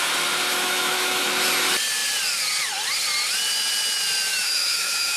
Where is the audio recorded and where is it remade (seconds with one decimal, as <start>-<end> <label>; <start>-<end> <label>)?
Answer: 0.0-0.5 recorded; 0.5-1.3 remade; 1.3-4.3 recorded; 4.3-5.2 remade